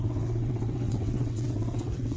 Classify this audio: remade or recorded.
remade